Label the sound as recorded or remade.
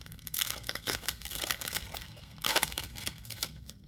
remade